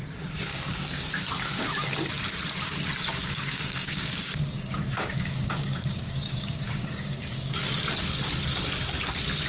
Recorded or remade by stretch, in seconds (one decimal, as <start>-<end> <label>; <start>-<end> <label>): 0.0-0.5 recorded; 0.5-1.3 remade; 1.3-3.1 recorded; 3.1-7.6 remade; 7.6-9.5 recorded